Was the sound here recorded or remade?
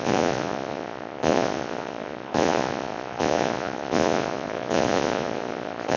remade